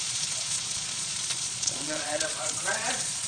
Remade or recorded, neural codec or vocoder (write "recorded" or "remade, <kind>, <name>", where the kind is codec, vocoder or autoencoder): remade, vocoder, Vocos